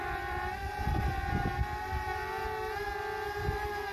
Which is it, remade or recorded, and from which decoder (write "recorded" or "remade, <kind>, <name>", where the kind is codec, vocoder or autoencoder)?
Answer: recorded